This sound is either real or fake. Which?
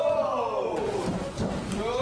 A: fake